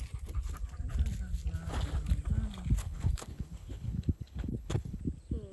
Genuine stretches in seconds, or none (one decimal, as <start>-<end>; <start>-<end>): 0.0-2.8; 5.0-5.5